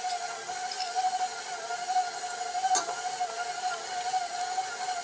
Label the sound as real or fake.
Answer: real